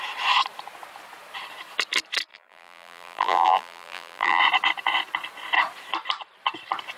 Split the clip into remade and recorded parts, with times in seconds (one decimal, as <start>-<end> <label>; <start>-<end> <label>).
0.0-2.3 recorded; 2.3-4.4 remade; 4.4-7.0 recorded